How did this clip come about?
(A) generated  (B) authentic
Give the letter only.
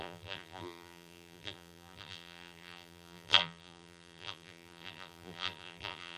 A